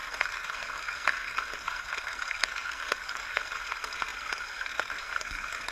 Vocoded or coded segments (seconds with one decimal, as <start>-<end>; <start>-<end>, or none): 0.0-5.7